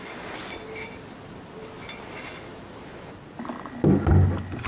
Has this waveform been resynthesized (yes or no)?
no